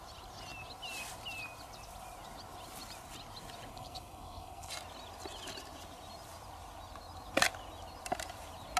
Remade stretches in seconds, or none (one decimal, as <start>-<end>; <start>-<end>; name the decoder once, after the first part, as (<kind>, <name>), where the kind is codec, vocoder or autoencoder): 3.7-4.7 (codec, SNAC)